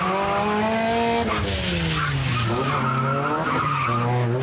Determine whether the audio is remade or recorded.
recorded